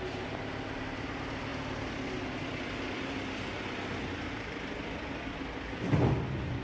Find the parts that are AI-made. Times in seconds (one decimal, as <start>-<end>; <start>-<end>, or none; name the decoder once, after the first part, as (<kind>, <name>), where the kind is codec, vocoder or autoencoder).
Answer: none